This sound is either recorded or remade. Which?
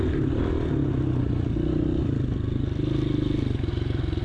recorded